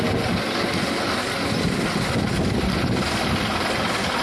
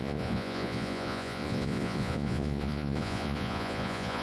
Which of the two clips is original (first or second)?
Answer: first